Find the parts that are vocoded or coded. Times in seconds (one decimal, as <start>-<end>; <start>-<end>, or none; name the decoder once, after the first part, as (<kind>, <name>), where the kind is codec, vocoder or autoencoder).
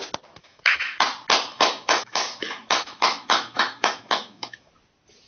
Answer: 0.4-1.0 (autoencoder, DAC-VAE); 1.5-4.7